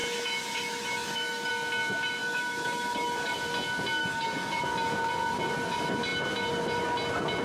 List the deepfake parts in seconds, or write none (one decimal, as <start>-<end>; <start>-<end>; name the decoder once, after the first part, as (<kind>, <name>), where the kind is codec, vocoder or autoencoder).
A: 0.0-1.5 (autoencoder, DAC-VAE); 2.2-3.3; 4.0-4.6